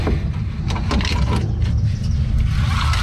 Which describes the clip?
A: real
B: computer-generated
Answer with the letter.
A